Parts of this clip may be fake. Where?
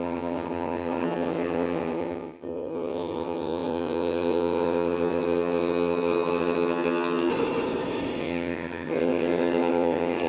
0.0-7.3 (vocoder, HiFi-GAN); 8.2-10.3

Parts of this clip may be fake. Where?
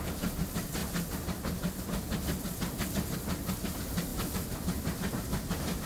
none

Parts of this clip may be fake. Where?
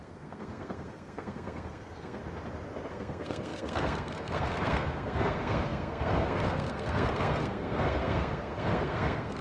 0.0-2.2 (codec, SNAC); 2.9-9.4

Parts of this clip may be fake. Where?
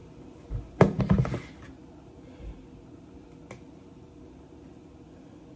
none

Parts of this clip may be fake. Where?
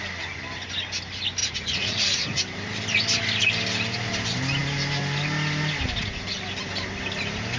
1.4-2.4 (vocoder, Vocos)